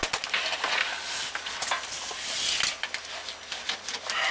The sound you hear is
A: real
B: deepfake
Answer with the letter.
A